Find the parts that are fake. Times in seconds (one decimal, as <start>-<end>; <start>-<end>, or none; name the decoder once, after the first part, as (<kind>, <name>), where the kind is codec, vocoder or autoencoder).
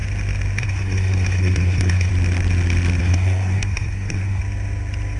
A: 0.6-2.1 (codec, SNAC); 3.0-4.4